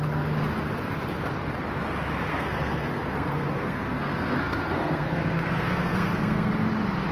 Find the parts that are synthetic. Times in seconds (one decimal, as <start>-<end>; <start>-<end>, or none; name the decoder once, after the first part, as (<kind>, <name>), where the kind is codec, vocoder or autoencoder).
2.3-6.5 (codec, SNAC)